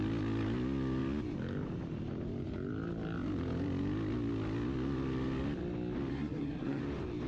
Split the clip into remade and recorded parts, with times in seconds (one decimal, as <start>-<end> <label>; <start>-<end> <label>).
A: 0.0-6.1 recorded; 6.1-6.8 remade; 6.8-7.3 recorded